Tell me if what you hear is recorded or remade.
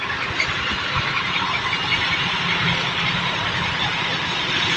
remade